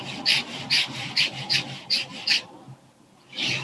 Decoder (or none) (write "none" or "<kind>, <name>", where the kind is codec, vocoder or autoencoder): none